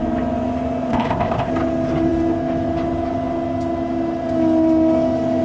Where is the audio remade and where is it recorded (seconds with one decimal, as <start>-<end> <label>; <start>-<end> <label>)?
0.0-0.9 recorded; 0.9-1.5 remade; 1.5-5.4 recorded